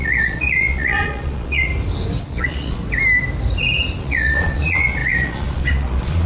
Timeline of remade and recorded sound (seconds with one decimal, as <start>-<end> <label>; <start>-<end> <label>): 0.0-1.7 remade; 1.7-2.2 recorded; 2.2-2.8 remade; 2.8-4.0 recorded; 4.0-6.3 remade